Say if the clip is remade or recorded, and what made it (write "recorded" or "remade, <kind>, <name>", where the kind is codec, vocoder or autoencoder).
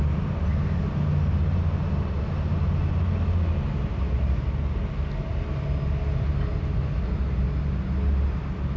recorded